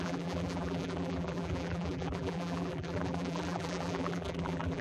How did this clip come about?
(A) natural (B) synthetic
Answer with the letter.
B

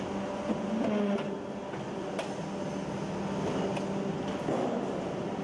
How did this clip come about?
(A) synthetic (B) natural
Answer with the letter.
B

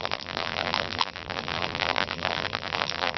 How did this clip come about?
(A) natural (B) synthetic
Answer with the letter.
B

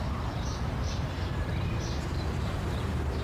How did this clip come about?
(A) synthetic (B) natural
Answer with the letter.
A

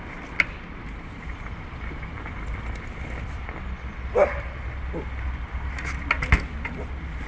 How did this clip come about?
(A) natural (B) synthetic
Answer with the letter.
A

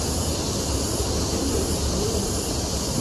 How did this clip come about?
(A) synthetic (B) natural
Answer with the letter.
B